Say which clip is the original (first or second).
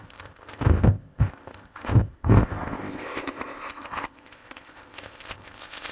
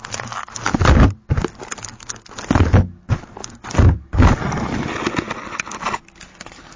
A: second